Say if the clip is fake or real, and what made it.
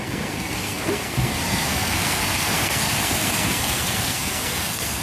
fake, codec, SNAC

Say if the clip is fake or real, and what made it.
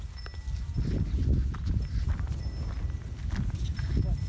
real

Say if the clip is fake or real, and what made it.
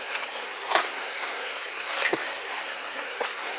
fake, codec, SNAC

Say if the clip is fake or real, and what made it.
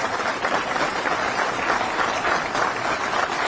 real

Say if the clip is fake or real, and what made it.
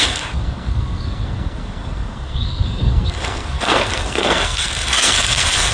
fake, codec, SNAC